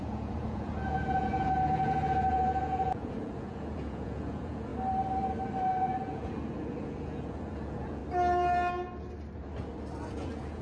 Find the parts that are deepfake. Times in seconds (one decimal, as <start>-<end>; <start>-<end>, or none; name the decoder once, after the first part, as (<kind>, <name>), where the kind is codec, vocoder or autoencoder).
0.0-4.7 (vocoder, Vocos); 5.6-8.0; 10.1-10.6